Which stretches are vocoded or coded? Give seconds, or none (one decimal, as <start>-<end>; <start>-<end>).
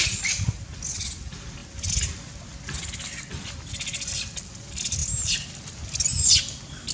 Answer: none